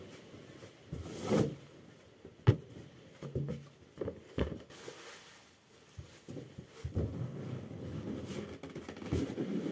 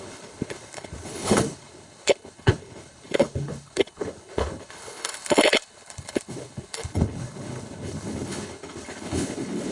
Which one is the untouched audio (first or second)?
first